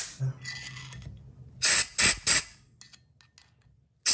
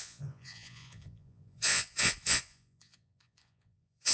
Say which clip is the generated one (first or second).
second